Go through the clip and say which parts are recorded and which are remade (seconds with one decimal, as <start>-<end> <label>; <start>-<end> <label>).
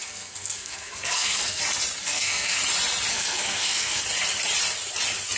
0.0-1.6 remade; 1.6-2.0 recorded; 2.0-2.6 remade; 2.6-3.1 recorded; 3.1-4.0 remade; 4.0-5.4 recorded